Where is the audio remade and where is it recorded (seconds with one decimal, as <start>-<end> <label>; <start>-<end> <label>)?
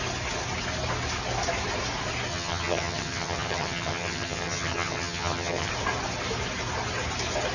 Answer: 0.0-2.3 recorded; 2.3-5.7 remade; 5.7-7.5 recorded